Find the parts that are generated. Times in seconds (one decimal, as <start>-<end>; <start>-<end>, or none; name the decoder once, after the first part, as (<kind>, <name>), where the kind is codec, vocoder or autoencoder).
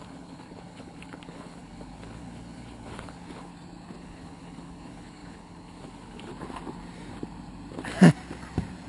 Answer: 0.0-3.5 (codec, HILCodec); 4.0-6.3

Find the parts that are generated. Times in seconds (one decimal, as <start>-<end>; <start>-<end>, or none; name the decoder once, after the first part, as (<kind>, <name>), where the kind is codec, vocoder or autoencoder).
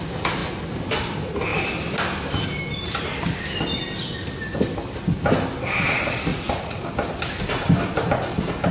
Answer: 6.3-6.8 (vocoder, Vocos)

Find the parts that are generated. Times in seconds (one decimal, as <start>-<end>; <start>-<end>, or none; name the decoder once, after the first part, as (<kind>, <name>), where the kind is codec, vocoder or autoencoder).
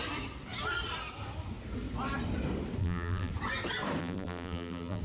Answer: 2.8-3.3 (vocoder, BigVGAN v2); 4.0-5.0